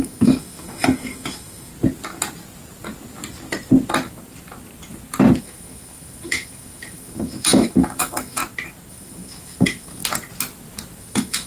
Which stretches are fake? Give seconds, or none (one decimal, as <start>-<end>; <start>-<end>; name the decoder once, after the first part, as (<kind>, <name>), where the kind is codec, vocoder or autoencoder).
0.0-1.7 (autoencoder, DAC-VAE); 5.4-8.4; 8.9-10.0; 11.0-11.5